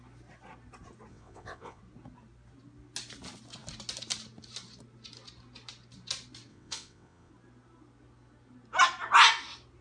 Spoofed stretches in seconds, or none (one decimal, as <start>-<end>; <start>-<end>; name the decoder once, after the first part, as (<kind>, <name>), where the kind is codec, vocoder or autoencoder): 1.1-1.8 (vocoder, WaveNeXt); 6.5-7.3